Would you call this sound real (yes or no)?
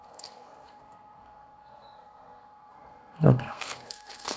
no